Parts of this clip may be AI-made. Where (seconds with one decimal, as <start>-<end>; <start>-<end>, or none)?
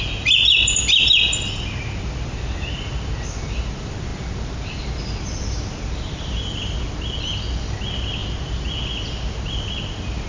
none